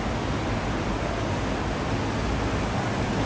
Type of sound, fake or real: real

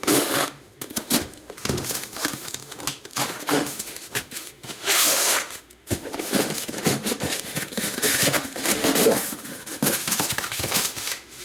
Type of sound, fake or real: fake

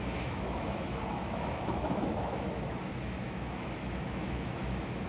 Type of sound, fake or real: fake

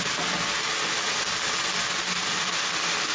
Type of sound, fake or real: real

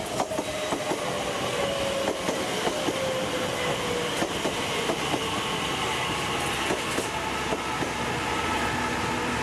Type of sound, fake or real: real